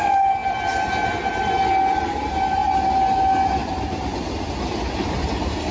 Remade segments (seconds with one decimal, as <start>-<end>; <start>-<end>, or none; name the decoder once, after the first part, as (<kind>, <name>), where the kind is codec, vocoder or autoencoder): none